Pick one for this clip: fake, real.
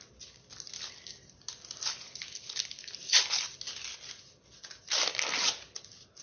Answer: real